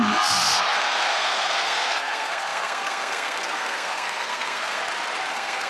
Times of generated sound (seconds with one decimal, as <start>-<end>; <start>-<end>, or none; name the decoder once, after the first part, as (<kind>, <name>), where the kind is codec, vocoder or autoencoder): 0.0-4.8 (codec, SNAC); 5.3-5.7